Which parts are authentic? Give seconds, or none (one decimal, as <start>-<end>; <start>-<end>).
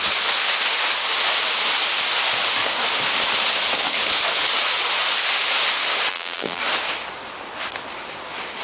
0.0-6.1; 6.6-8.6